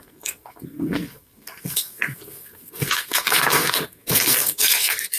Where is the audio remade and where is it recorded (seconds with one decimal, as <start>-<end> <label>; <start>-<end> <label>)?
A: 0.0-5.2 remade